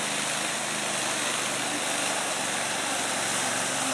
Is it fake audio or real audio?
real